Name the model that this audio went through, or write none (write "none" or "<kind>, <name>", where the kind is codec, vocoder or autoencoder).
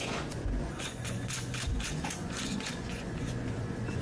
vocoder, Vocos